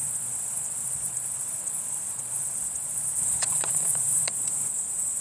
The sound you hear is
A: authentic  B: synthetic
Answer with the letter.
B